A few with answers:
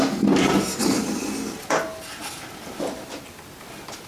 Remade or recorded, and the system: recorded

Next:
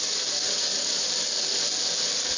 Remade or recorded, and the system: recorded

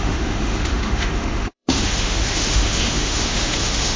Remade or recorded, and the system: remade, autoencoder, DAC-VAE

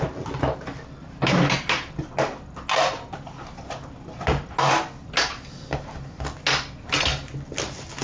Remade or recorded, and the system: recorded